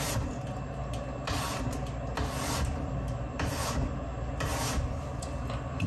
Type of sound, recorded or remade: recorded